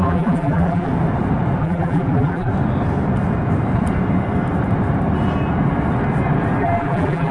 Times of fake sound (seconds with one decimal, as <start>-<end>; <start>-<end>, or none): 0.0-0.9; 1.6-2.5; 6.6-7.3